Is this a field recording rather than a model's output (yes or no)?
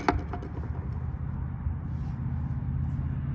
yes